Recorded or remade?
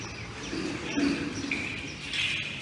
recorded